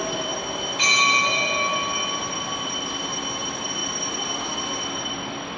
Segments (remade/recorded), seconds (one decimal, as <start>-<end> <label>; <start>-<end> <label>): 0.0-5.6 recorded